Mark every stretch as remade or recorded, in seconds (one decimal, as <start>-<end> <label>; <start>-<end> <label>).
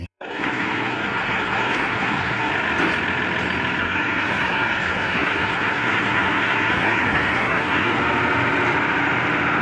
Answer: 0.0-2.5 remade; 2.5-3.8 recorded; 3.8-8.0 remade; 8.0-9.6 recorded